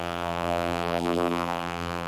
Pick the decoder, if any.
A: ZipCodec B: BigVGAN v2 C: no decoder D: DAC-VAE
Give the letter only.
B